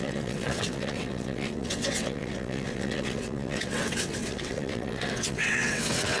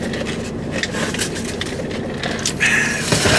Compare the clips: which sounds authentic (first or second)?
second